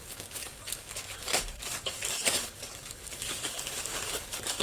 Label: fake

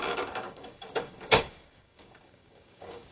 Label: fake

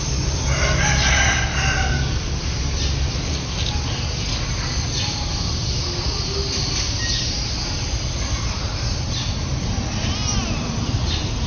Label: real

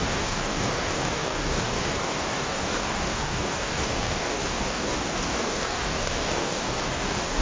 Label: fake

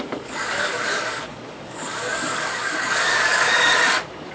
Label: fake